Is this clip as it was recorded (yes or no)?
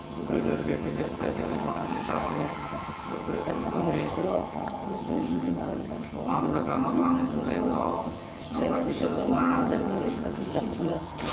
no